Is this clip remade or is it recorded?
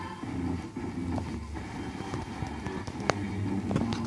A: recorded